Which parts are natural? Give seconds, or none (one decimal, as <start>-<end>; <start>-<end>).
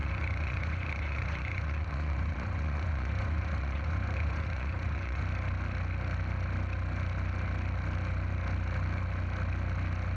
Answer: 5.2-10.2